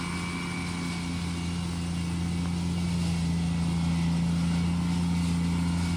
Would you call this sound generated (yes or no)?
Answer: no